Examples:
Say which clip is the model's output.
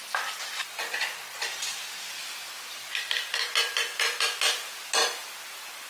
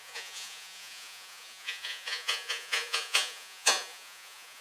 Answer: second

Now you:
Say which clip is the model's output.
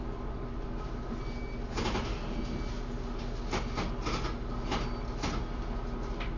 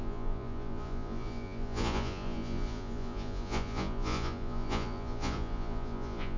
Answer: second